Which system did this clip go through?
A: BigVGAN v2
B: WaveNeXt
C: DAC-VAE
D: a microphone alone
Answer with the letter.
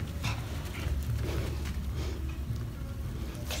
D